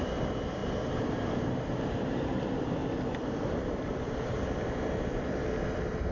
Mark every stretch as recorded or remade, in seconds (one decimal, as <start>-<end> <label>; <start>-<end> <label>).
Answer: 0.0-0.6 recorded; 0.6-2.4 remade; 2.4-2.8 recorded; 2.8-4.4 remade; 4.4-6.1 recorded